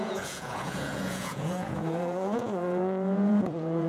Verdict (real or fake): fake